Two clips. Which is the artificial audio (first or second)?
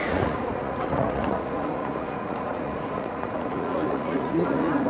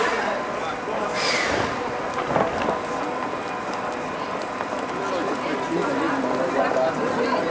first